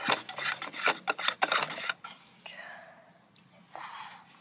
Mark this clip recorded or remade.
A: recorded